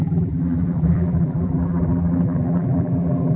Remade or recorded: remade